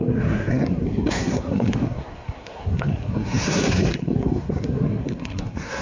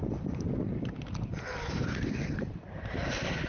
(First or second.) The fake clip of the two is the first